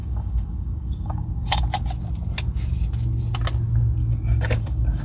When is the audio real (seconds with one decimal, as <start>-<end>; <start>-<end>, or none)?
1.6-4.0